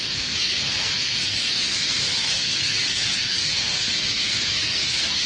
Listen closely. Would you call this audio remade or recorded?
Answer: remade